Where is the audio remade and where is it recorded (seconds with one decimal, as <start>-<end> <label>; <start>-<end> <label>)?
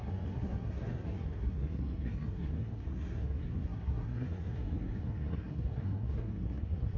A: 0.0-7.0 remade